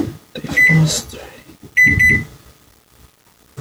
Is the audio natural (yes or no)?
yes